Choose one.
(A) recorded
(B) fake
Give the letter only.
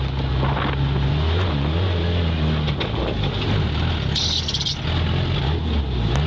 A